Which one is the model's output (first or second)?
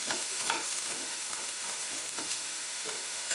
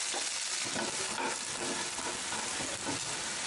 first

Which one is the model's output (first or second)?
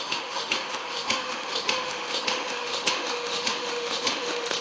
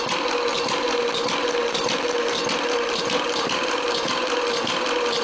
first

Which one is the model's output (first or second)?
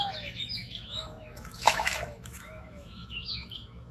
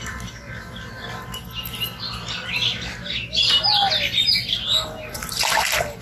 first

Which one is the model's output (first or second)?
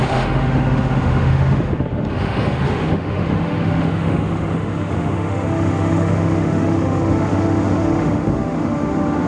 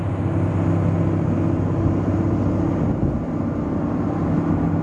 first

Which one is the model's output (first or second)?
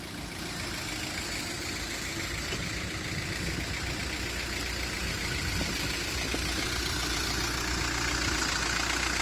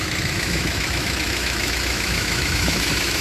second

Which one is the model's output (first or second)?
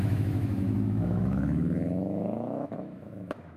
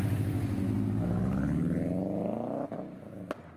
first